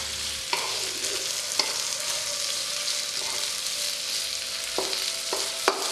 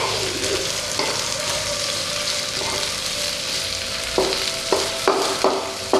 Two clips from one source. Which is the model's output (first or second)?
second